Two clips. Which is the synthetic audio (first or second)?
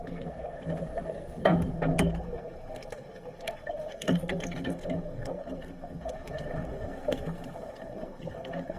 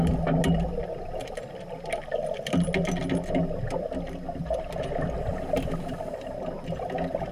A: first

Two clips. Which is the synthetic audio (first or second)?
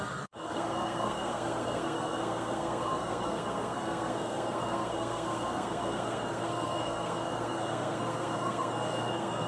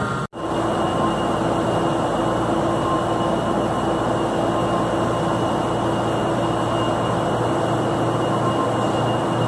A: first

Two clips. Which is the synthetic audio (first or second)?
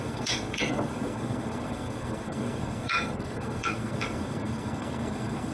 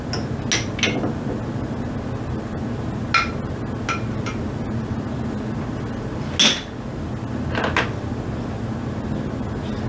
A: first